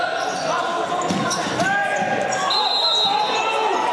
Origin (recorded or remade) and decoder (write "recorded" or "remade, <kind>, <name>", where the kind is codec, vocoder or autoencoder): recorded